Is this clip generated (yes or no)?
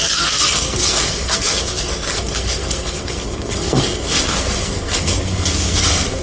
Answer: yes